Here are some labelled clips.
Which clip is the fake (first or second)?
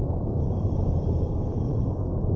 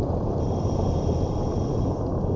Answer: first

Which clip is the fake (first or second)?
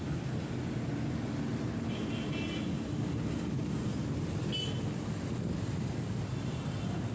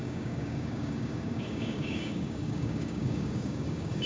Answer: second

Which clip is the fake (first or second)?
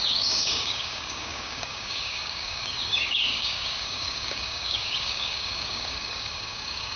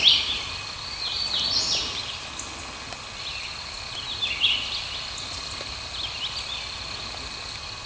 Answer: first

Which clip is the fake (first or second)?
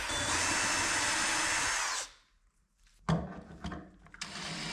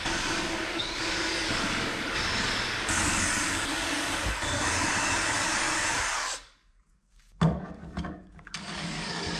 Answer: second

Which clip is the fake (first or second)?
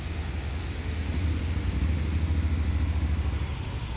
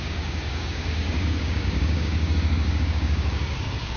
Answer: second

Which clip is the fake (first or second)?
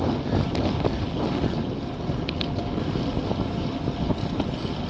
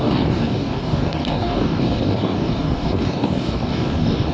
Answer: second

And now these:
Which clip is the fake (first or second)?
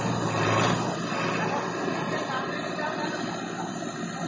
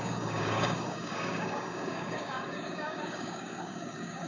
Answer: second